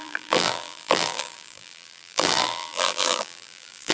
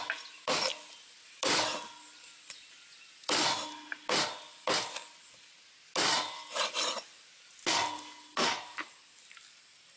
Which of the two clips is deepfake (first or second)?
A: first